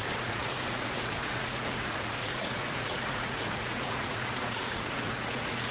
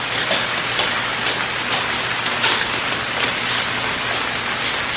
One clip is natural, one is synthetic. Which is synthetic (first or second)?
first